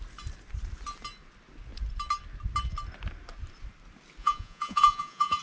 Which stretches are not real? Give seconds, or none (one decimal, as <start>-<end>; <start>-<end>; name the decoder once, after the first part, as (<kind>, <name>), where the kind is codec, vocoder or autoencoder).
4.2-5.4 (vocoder, Vocos)